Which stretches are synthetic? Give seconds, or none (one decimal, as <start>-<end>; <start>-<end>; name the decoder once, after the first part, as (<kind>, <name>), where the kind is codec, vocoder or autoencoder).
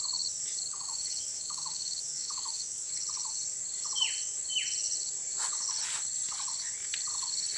0.7-2.9 (autoencoder, DAC-VAE)